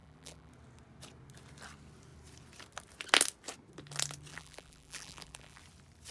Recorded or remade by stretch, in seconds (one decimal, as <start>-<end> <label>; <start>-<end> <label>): 0.0-0.5 remade; 0.5-4.3 recorded; 4.3-5.6 remade; 5.6-6.1 recorded